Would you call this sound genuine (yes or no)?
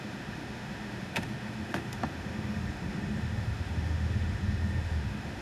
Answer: no